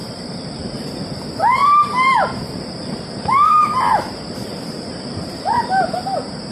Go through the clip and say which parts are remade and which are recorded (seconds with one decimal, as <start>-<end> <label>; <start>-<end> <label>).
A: 0.0-1.0 remade; 1.0-1.6 recorded; 1.6-5.5 remade; 5.5-6.5 recorded